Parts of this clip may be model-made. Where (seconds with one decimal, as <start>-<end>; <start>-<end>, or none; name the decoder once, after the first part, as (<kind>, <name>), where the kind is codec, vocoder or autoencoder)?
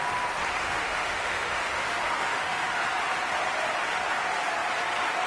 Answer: 0.6-2.8 (autoencoder, DAC-VAE)